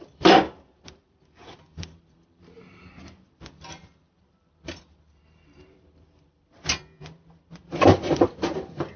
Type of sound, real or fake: fake